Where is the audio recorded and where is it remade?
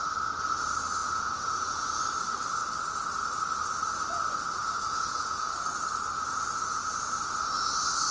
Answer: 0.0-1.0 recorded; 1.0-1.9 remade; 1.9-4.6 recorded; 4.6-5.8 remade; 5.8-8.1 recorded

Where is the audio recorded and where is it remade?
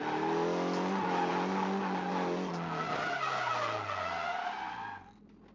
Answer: 0.0-5.5 recorded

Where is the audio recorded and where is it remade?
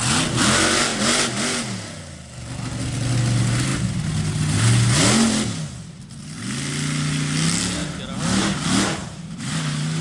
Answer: 0.0-9.0 recorded; 9.0-10.0 remade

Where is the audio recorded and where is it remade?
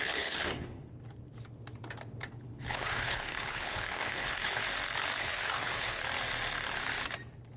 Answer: 0.0-0.9 remade; 0.9-2.3 recorded; 2.3-4.6 remade; 4.6-5.2 recorded; 5.2-6.0 remade; 6.0-7.6 recorded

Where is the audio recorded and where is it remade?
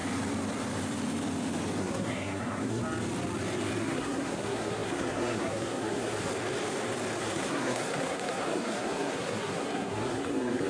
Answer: 0.0-1.8 recorded; 1.8-2.8 remade; 2.8-3.8 recorded; 3.8-6.3 remade; 6.3-7.2 recorded; 7.2-10.7 remade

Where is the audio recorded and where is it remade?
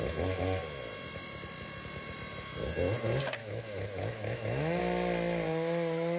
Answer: 0.0-3.4 recorded; 3.4-4.8 remade; 4.8-6.2 recorded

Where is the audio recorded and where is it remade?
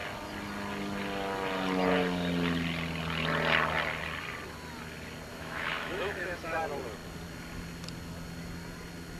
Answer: 0.0-5.3 recorded; 5.3-6.6 remade; 6.6-9.2 recorded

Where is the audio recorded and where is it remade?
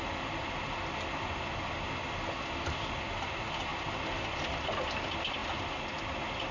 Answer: 0.0-6.5 recorded